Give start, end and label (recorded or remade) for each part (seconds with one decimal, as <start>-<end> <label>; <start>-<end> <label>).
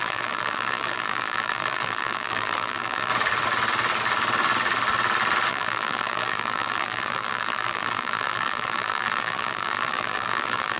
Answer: 0.0-3.1 remade; 3.1-5.5 recorded; 5.5-10.8 remade